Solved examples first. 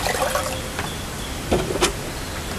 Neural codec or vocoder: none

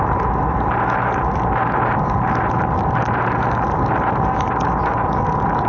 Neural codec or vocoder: none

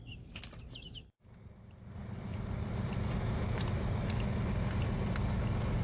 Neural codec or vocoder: none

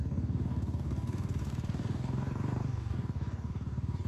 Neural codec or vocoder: codec, DAC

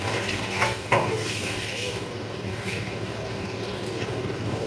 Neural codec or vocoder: codec, DAC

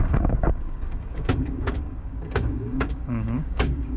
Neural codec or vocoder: codec, DAC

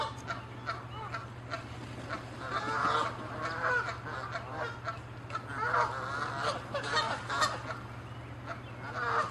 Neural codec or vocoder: none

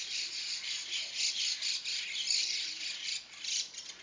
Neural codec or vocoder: none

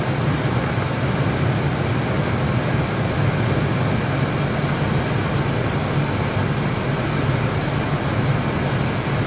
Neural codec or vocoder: none